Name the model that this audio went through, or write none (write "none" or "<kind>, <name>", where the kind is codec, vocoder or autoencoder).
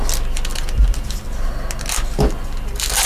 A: none